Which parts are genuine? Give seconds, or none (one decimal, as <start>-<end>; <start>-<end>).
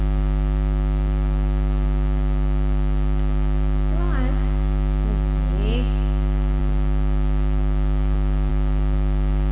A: 0.0-9.5